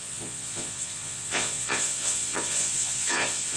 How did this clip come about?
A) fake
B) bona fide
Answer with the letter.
A